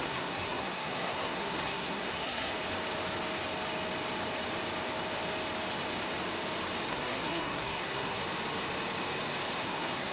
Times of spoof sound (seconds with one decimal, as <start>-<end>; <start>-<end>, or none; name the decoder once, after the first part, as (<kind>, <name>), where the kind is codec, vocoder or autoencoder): 0.0-2.5 (codec, SNAC); 6.9-8.2; 9.6-10.1